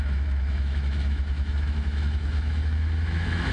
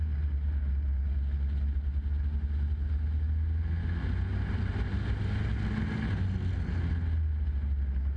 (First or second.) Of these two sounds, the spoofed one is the first